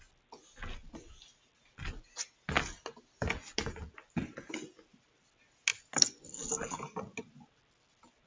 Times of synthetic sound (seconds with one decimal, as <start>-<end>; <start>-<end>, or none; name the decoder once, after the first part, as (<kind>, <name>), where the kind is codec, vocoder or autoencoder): none